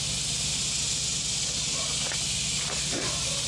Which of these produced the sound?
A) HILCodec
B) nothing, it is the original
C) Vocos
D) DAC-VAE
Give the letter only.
B